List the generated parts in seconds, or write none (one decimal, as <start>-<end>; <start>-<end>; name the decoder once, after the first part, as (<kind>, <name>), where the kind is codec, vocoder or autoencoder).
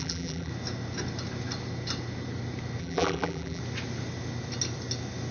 0.0-0.5 (vocoder, BigVGAN v2); 2.8-3.6